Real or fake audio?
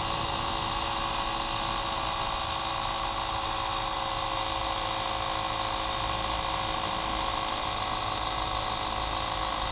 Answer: real